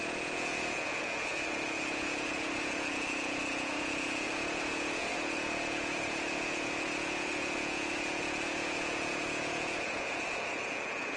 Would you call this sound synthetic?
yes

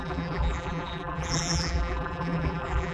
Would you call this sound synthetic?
yes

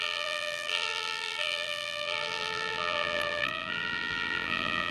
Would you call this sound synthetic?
yes